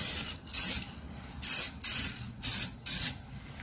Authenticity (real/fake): real